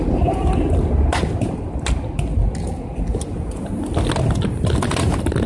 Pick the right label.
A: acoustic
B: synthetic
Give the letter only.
A